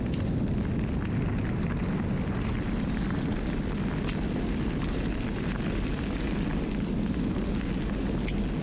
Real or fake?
real